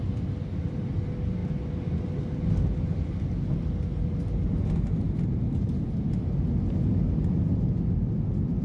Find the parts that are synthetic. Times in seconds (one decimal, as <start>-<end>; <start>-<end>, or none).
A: none